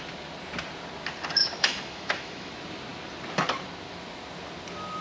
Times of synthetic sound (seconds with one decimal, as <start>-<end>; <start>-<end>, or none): 1.4-2.5